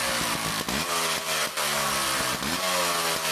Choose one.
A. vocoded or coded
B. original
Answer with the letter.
B